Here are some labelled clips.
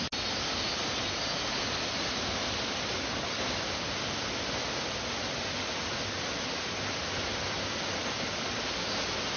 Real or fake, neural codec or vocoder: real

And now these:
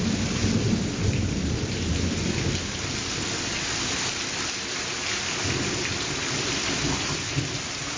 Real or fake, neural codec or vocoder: real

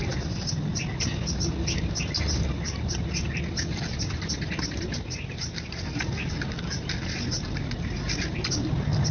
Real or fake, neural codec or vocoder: real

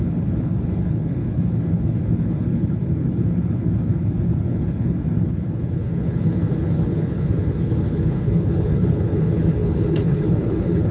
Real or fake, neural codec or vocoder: fake, codec, HILCodec